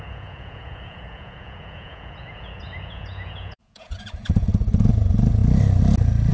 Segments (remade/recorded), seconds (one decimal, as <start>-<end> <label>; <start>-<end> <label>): 0.0-5.4 remade; 5.4-6.3 recorded